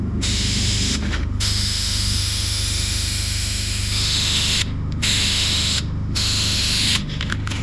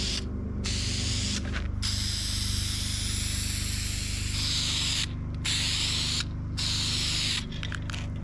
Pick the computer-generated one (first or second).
first